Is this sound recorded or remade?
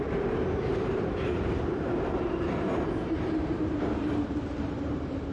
remade